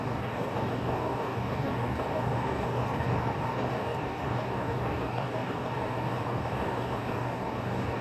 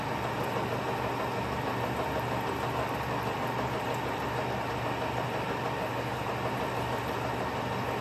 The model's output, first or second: first